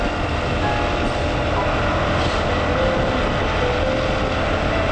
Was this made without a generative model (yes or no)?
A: yes